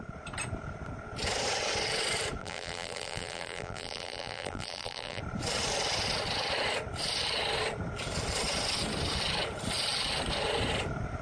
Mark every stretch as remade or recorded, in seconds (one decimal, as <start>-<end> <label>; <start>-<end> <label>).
0.0-2.4 recorded; 2.4-5.2 remade; 5.2-11.2 recorded

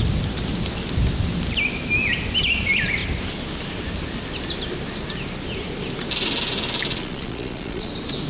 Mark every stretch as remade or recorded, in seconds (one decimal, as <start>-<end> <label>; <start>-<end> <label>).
0.0-6.9 recorded; 6.9-7.9 remade; 7.9-8.3 recorded

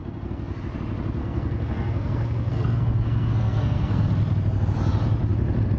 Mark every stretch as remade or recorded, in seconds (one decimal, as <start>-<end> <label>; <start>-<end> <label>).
0.0-0.6 remade; 0.6-1.2 recorded; 1.2-4.1 remade; 4.1-5.8 recorded

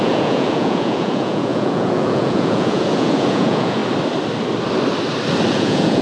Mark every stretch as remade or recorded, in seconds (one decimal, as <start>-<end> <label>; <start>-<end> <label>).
0.0-3.8 remade; 3.8-5.5 recorded; 5.5-6.0 remade

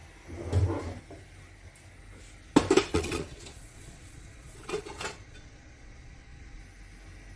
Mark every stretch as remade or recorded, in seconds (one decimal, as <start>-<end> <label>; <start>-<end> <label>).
0.0-2.9 recorded; 2.9-6.6 remade; 6.6-7.4 recorded

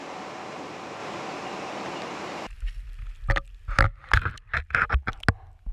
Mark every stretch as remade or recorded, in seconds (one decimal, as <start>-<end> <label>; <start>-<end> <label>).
0.0-5.7 recorded

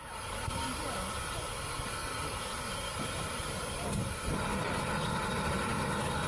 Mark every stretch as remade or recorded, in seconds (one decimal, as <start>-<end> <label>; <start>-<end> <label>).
0.0-6.3 recorded